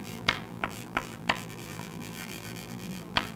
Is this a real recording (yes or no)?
no